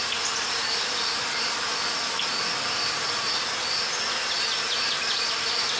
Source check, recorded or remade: recorded